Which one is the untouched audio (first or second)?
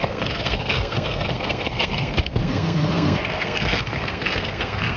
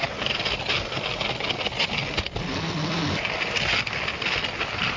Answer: second